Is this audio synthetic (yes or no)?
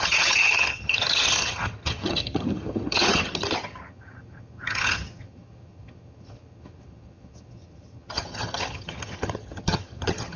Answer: yes